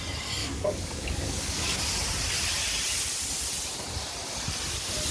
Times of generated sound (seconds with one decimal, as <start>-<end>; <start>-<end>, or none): 0.4-1.8